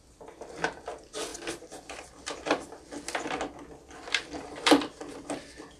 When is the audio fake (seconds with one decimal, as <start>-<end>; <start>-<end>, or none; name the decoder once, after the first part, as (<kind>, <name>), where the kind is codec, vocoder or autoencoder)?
none